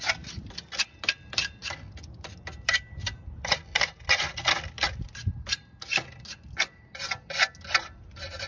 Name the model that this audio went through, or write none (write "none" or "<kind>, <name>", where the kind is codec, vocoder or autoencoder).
none